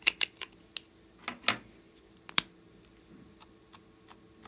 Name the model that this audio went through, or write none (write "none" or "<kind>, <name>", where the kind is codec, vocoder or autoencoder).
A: none